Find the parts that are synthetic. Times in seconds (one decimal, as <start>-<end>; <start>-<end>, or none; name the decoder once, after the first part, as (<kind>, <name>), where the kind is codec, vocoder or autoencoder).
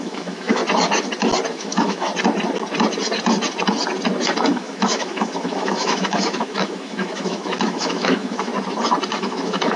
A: 0.0-0.6 (autoencoder, DAC-VAE); 1.5-2.1; 4.5-8.5; 9.1-9.8